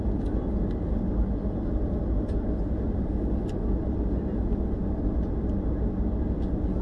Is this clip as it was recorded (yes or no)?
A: yes